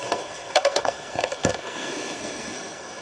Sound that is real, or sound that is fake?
fake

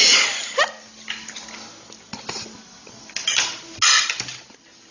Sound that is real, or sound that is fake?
real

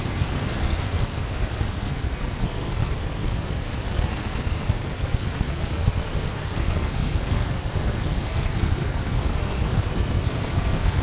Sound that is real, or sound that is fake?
fake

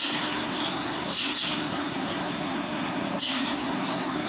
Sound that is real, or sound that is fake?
fake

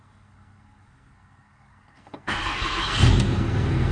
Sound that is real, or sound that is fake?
fake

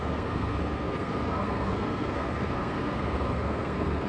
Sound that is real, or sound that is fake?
fake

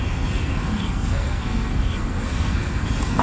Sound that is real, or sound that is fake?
fake